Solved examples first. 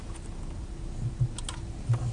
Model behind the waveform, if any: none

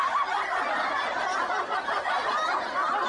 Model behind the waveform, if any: none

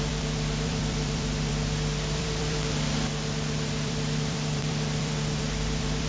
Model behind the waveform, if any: vocoder, BigVGAN v2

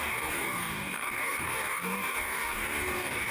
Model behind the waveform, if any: codec, DAC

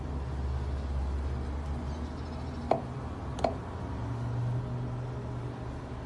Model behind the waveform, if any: none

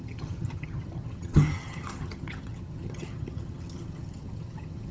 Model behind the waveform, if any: vocoder, HiFi-GAN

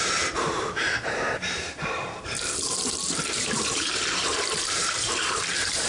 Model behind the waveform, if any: vocoder, BigVGAN v2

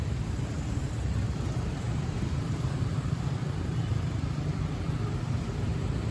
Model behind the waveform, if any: vocoder, BigVGAN v2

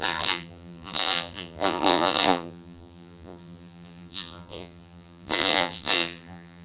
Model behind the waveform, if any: vocoder, BigVGAN v2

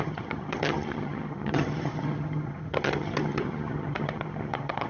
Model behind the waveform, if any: vocoder, HiFi-GAN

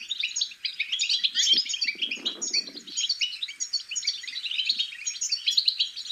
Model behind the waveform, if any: none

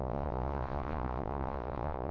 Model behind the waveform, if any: vocoder, Vocos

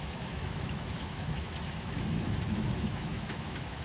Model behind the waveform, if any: autoencoder, DAC-VAE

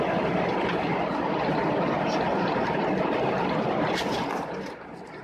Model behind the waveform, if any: none